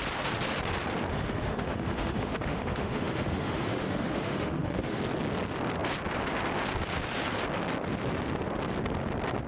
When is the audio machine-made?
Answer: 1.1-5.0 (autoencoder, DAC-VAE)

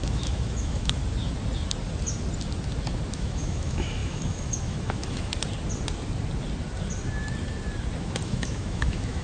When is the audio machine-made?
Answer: 0.0-1.0 (autoencoder, DAC-VAE); 3.1-5.3; 8.0-9.2

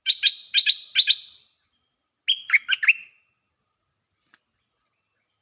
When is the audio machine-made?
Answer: none

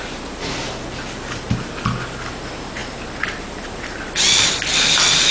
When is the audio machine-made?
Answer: none